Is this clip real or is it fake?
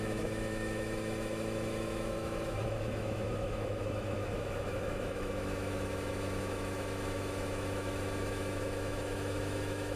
fake